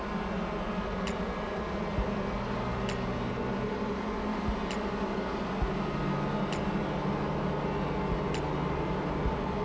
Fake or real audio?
real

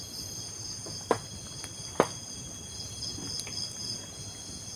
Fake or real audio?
real